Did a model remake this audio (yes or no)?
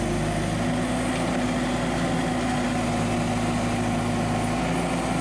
no